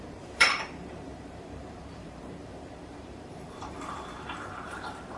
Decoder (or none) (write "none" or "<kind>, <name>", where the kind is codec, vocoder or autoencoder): vocoder, BigVGAN v2